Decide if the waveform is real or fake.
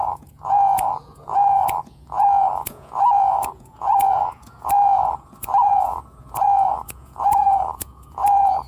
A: fake